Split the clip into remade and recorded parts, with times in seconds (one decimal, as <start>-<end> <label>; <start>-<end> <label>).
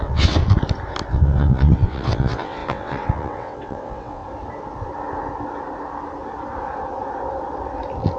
0.0-0.4 remade; 0.4-1.1 recorded; 1.1-4.2 remade; 4.2-8.2 recorded